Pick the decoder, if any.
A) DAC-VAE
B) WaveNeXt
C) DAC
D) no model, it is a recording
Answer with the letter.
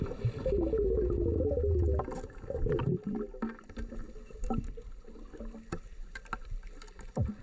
D